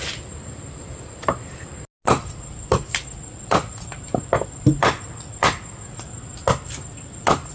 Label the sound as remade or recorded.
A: recorded